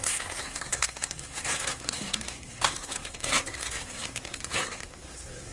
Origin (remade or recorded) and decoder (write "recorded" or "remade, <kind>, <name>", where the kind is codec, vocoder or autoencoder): remade, codec, SNAC